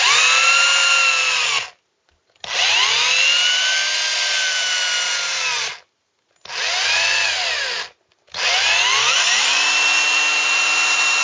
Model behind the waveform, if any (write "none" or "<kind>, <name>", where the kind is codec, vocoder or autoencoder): none